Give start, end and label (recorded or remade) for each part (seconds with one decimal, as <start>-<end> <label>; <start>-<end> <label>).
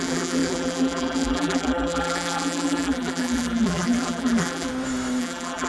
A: 0.0-4.7 remade; 4.7-5.2 recorded; 5.2-5.7 remade